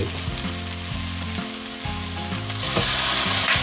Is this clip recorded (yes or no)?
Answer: yes